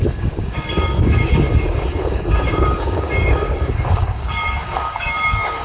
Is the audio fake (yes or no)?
yes